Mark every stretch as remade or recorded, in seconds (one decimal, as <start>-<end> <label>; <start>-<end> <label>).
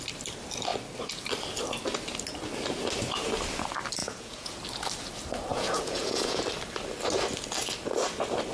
0.0-4.0 recorded; 4.0-4.5 remade; 4.5-5.5 recorded; 5.5-6.4 remade; 6.4-8.5 recorded